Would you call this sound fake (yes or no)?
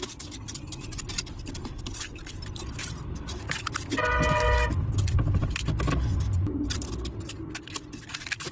no